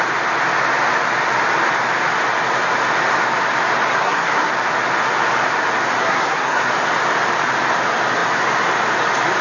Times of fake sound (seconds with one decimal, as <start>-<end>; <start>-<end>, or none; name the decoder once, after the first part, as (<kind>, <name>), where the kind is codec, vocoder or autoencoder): 3.9-4.5 (codec, SNAC); 6.0-6.7